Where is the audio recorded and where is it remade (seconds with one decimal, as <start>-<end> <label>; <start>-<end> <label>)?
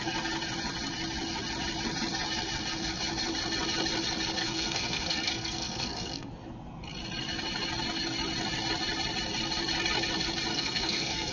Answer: 0.0-4.4 recorded; 4.4-6.3 remade; 6.3-10.5 recorded; 10.5-11.3 remade